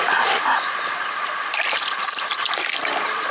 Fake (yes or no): yes